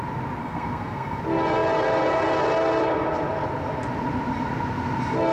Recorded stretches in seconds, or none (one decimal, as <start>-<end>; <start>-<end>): 0.0-0.4; 1.2-5.3